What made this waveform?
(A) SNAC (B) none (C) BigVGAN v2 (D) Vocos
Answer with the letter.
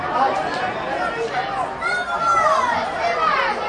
B